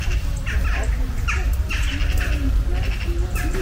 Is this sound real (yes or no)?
yes